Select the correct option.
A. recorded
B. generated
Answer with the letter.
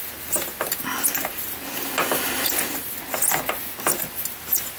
A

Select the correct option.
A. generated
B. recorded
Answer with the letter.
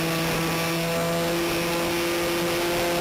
B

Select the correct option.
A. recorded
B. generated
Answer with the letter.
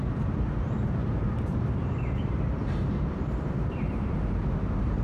B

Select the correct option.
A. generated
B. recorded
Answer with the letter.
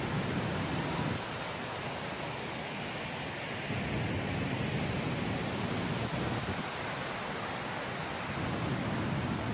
B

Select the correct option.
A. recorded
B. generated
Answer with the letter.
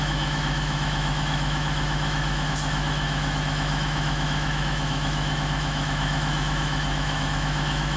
B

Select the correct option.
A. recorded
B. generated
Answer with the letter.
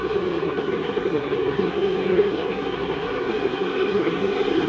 B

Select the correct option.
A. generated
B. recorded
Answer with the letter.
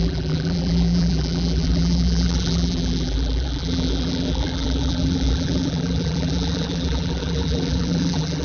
A